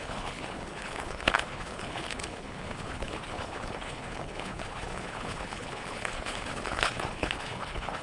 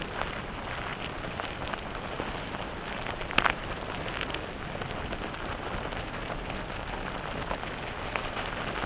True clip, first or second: second